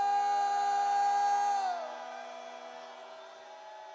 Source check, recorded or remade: recorded